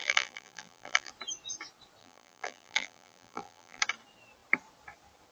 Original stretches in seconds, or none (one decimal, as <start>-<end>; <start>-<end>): 1.1-2.0; 3.8-5.3